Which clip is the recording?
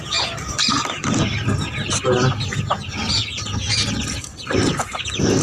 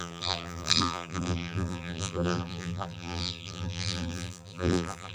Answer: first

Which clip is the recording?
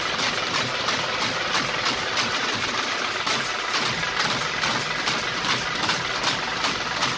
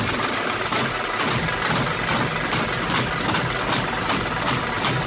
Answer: second